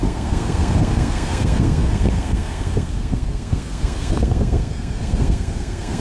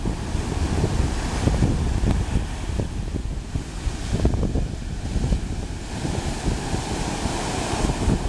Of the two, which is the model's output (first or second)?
first